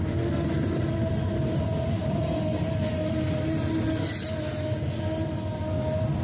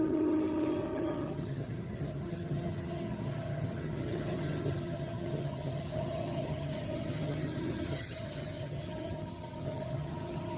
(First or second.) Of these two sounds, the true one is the first